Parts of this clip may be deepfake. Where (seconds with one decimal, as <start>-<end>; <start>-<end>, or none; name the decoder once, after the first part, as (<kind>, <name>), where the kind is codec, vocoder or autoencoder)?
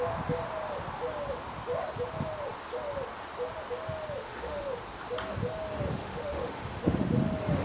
4.2-4.8 (autoencoder, DAC-VAE); 6.0-7.0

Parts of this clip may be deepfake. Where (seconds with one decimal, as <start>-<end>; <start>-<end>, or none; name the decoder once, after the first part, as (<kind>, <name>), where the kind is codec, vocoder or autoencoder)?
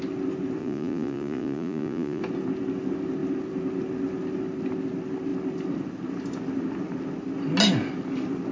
0.6-2.2 (vocoder, Vocos)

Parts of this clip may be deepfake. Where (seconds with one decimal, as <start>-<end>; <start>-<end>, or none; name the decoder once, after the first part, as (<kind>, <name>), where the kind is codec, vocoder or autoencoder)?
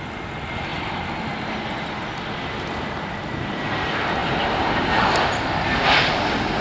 none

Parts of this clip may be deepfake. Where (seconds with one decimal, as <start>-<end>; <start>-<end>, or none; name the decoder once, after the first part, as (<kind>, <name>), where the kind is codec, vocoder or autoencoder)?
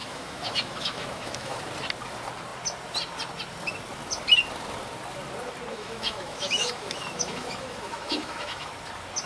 0.0-1.6 (autoencoder, DAC-VAE); 5.7-8.7